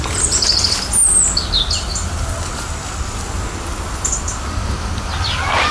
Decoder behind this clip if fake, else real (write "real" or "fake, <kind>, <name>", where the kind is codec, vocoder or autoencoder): real